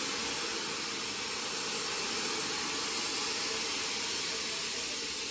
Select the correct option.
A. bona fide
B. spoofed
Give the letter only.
A